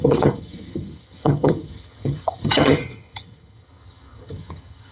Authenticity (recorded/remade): remade